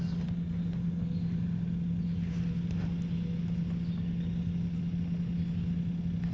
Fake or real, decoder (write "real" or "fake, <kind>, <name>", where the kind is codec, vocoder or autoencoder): real